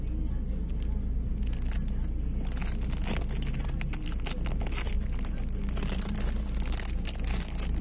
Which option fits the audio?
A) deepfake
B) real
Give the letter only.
B